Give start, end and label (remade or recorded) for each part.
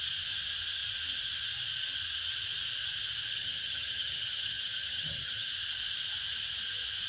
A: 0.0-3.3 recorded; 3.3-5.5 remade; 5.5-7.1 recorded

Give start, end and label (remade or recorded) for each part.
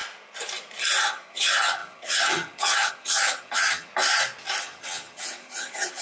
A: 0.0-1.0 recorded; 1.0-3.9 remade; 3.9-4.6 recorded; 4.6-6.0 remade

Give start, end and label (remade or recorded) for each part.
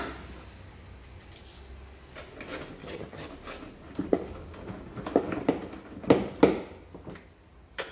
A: 0.0-2.8 recorded; 2.8-3.3 remade; 3.3-7.9 recorded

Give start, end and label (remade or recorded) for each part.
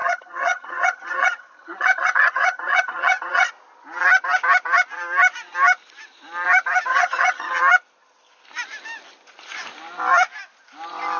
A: 0.0-3.5 remade; 3.5-6.9 recorded; 6.9-7.6 remade; 7.6-11.2 recorded